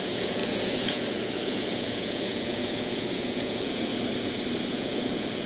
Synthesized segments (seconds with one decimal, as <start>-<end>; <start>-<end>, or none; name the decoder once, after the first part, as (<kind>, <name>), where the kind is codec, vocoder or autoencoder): 0.0-3.9 (vocoder, Vocos); 4.7-5.5